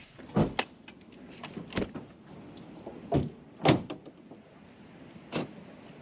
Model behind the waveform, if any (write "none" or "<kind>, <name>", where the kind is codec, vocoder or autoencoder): none